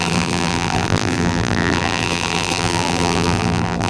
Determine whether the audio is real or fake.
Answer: fake